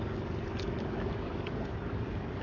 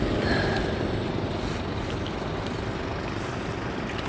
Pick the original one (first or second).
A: second